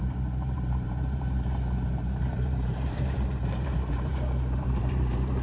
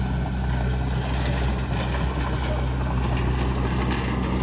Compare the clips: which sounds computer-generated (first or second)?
first